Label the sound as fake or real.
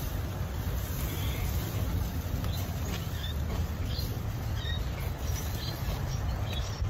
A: real